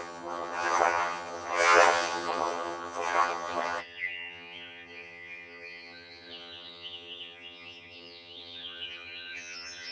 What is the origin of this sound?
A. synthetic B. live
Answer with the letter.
A